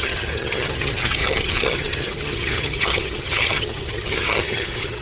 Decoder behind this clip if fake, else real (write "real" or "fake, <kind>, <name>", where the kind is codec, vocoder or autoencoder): fake, vocoder, HiFi-GAN